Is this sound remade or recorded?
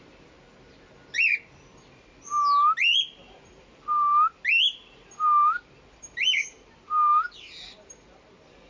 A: recorded